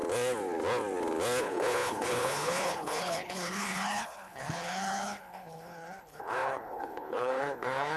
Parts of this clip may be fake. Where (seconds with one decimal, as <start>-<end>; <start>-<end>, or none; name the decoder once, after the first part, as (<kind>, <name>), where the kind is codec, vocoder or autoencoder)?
1.4-8.0 (codec, HILCodec)